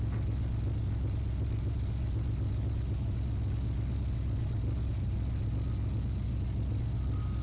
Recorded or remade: recorded